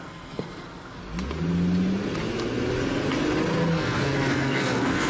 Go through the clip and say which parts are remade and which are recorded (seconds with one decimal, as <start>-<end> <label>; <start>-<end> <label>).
0.0-1.0 remade; 1.0-3.7 recorded; 3.7-5.1 remade